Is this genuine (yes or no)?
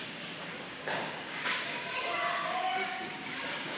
no